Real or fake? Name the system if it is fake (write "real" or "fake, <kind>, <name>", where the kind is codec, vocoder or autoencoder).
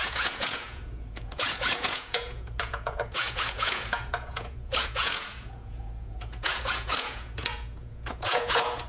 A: fake, vocoder, Vocos